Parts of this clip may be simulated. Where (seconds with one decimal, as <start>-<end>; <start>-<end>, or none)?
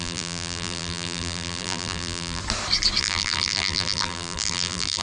0.0-2.4; 3.0-5.0